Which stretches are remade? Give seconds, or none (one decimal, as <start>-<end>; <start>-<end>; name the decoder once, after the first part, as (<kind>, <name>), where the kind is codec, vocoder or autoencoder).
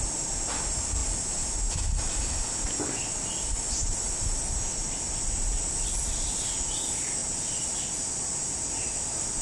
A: none